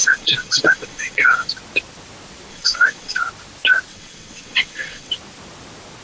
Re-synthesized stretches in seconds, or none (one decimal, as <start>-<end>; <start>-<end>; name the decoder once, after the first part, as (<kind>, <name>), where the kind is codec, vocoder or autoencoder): 0.0-1.5 (vocoder, WaveNeXt); 2.5-3.2; 3.9-5.1